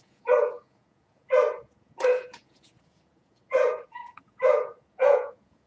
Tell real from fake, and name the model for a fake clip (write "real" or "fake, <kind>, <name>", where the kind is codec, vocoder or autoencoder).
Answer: fake, vocoder, Vocos